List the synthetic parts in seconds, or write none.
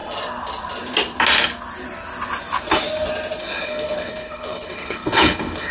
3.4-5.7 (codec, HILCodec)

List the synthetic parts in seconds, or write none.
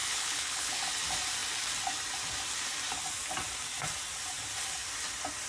0.0-0.8 (codec, HILCodec)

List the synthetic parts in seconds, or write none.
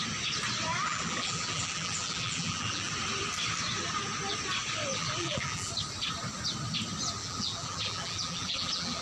0.8-2.9 (vocoder, BigVGAN v2); 4.9-5.7; 7.2-9.0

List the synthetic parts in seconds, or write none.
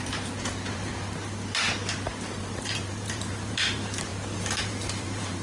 0.0-0.9 (vocoder, BigVGAN v2); 2.4-4.1; 4.6-5.4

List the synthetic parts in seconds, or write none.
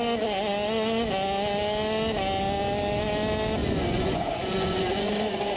3.6-5.6 (vocoder, Vocos)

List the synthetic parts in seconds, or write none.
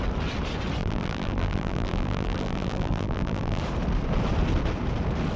0.8-3.6 (vocoder, BigVGAN v2)